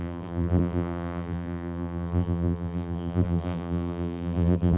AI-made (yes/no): yes